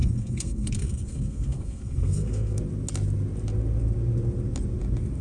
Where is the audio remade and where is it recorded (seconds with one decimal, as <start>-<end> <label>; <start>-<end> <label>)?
0.0-2.6 remade; 2.6-5.2 recorded